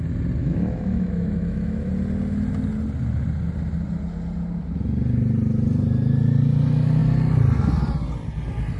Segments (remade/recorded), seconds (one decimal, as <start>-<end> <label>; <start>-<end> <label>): 0.0-0.4 recorded; 0.4-1.9 remade; 1.9-8.8 recorded